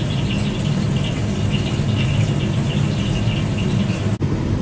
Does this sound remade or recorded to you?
recorded